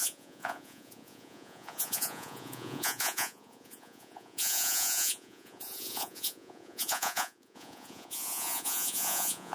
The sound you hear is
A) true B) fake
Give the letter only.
B